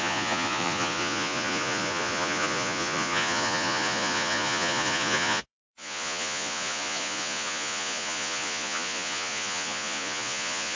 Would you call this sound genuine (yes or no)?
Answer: no